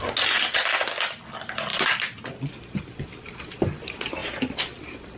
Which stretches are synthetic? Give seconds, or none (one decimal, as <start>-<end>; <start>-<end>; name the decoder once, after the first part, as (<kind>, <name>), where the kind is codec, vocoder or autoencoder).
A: 1.7-3.6 (vocoder, BigVGAN v2)